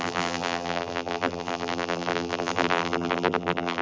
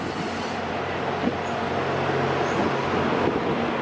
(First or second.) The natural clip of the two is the second